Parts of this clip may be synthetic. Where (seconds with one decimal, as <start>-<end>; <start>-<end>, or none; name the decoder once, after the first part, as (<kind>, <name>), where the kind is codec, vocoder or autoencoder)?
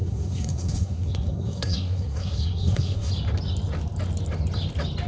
0.0-3.1 (codec, SNAC)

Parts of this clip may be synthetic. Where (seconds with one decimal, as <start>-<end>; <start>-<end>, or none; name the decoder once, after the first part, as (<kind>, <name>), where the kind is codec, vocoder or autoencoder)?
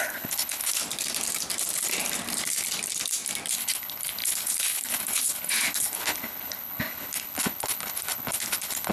0.0-0.8 (codec, HILCodec); 3.5-8.9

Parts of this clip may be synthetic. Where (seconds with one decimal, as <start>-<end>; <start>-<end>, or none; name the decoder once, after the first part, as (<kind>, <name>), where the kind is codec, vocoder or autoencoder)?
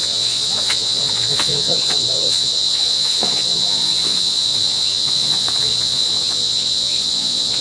0.0-7.6 (vocoder, Vocos)